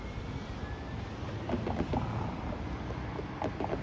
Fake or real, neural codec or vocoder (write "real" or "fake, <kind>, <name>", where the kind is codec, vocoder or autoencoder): real